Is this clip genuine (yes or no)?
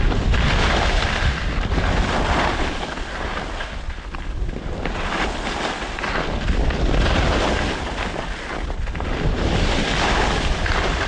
yes